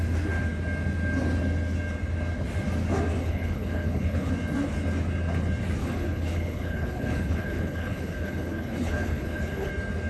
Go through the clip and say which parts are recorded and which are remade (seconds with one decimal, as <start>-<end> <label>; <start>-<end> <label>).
0.0-3.2 recorded; 3.2-4.3 remade; 4.3-5.8 recorded; 5.8-9.7 remade; 9.7-10.1 recorded